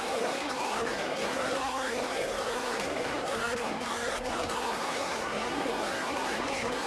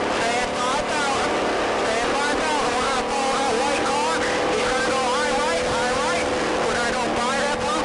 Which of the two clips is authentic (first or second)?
second